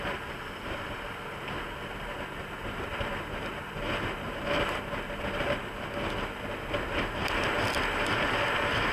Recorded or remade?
recorded